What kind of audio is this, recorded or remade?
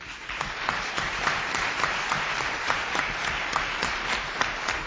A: remade